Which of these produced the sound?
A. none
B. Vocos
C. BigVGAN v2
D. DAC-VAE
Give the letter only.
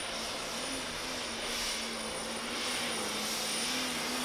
A